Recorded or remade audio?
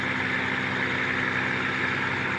recorded